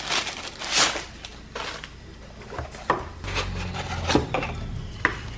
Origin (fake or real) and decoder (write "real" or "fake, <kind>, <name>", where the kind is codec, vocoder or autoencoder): real